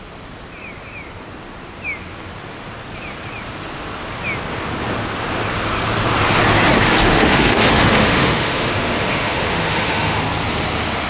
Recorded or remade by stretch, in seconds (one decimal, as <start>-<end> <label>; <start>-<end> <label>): 0.0-7.1 recorded; 7.1-10.2 remade; 10.2-11.1 recorded